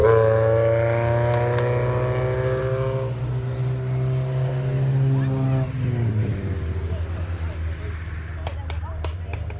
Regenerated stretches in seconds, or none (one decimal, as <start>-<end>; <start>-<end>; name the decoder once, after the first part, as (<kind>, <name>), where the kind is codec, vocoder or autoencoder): none